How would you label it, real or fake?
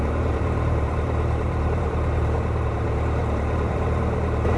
fake